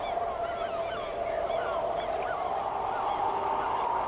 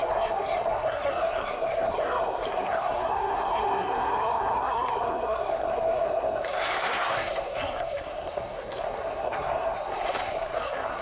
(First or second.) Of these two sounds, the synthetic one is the second